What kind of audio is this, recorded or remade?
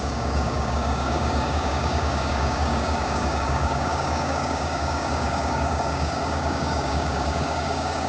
remade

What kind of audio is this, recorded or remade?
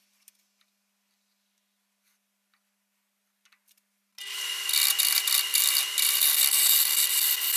recorded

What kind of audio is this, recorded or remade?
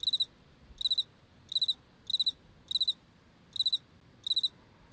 recorded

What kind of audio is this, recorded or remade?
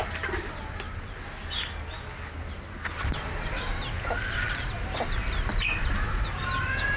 recorded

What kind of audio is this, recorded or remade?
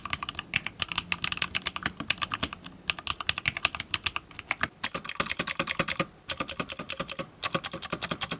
recorded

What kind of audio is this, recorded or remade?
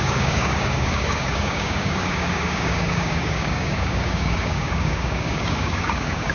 remade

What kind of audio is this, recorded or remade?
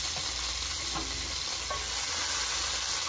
recorded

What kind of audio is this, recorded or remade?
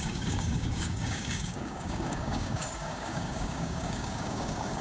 remade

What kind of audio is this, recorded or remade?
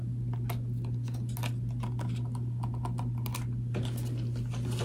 recorded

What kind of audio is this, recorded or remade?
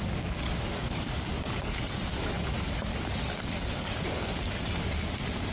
remade